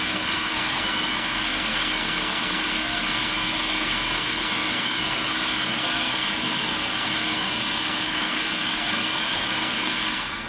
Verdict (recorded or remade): remade